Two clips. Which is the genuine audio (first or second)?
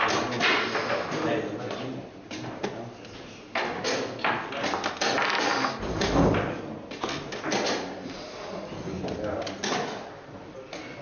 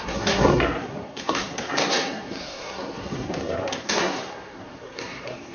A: first